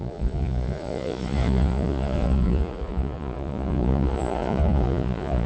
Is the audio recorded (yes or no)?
no